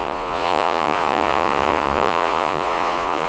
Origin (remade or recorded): remade